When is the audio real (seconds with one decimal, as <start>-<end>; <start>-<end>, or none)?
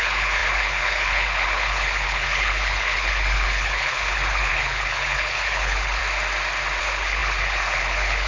6.0-6.8